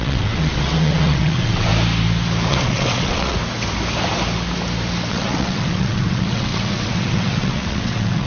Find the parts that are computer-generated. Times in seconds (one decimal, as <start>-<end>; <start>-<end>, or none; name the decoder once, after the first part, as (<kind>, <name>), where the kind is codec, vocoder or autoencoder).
0.0-1.7 (vocoder, WaveNeXt); 2.5-3.4; 5.1-8.3